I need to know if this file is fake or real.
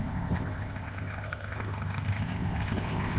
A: fake